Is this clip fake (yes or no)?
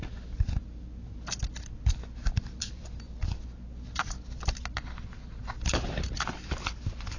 no